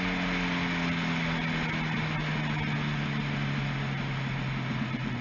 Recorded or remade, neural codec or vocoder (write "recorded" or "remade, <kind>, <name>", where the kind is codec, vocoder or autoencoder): recorded